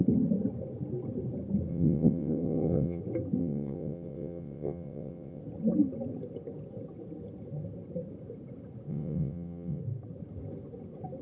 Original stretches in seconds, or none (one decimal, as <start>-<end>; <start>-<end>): 0.0-1.7; 3.0-3.4; 5.4-8.9; 9.8-11.2